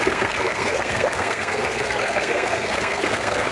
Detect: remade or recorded remade